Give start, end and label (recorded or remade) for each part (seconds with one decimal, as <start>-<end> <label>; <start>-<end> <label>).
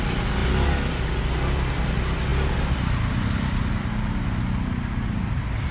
0.0-5.7 recorded